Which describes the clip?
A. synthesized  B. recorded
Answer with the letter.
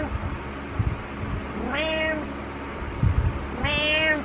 B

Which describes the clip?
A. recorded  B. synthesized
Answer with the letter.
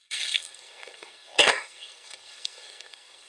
B